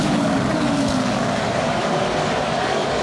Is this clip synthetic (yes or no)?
yes